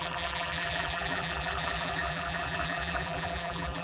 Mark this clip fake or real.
fake